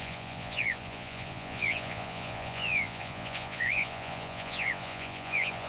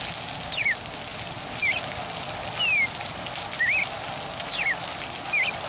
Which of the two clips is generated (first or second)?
first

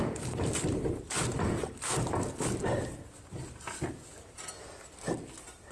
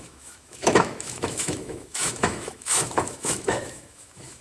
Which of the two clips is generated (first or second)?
second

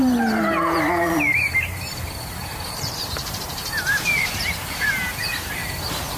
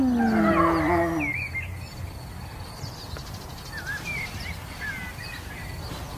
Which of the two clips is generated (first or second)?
first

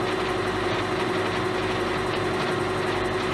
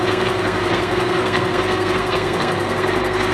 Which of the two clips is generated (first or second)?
second